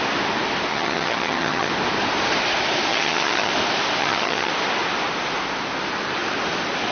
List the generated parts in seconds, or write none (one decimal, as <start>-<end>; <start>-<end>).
0.7-1.7; 2.9-3.5; 4.0-4.5